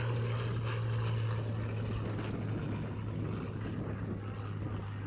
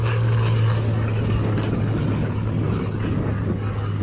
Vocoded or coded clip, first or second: second